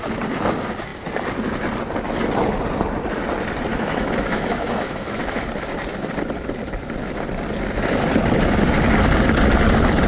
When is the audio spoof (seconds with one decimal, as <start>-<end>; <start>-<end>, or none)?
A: 3.7-5.4